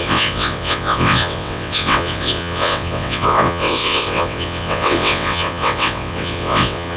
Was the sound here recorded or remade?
remade